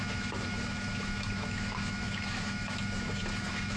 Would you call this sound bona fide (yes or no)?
no